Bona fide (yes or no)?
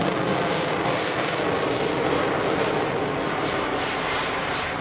yes